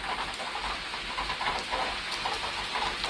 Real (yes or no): yes